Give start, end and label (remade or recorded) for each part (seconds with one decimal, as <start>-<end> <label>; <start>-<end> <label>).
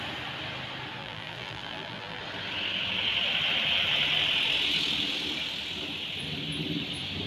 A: 0.0-1.0 recorded; 1.0-2.2 remade; 2.2-7.3 recorded